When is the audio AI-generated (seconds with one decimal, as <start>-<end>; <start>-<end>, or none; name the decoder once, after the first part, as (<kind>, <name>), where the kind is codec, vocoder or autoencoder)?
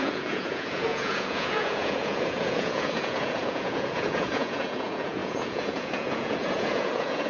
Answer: 0.0-7.3 (vocoder, Vocos)